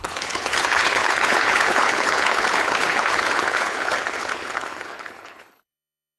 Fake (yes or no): yes